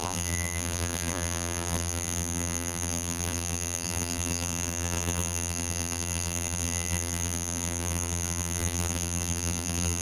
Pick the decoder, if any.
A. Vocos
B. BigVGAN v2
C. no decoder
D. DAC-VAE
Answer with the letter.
B